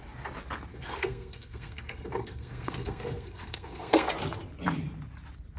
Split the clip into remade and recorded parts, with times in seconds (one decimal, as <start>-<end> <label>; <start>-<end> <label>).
0.0-0.7 recorded; 0.7-4.1 remade; 4.1-5.6 recorded